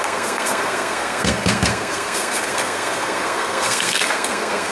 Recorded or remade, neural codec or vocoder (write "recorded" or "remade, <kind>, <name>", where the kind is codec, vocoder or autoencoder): remade, codec, SNAC